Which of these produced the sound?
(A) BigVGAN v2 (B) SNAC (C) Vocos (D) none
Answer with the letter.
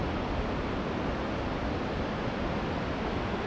D